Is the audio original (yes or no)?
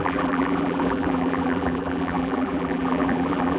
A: no